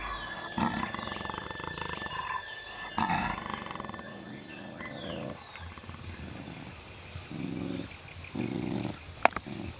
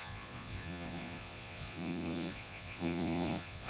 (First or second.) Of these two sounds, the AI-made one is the second